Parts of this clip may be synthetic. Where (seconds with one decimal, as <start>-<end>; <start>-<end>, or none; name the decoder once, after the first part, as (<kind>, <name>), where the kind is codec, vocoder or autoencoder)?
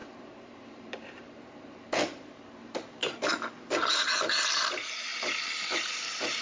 0.0-3.0 (vocoder, BigVGAN v2); 3.6-5.1; 5.7-6.4